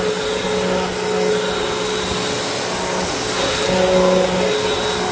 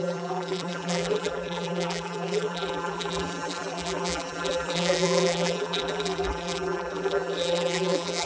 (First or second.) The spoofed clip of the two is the second